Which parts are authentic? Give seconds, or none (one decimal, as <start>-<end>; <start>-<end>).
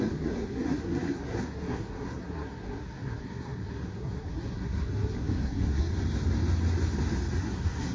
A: 5.9-7.4